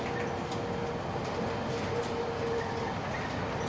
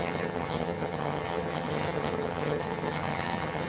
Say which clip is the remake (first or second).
second